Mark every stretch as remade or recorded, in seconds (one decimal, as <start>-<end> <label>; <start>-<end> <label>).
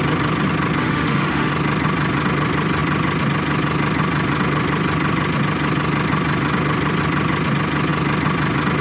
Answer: 0.0-0.8 recorded; 0.8-1.5 remade; 1.5-8.8 recorded